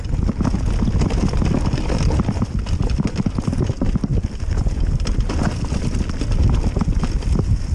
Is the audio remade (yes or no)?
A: no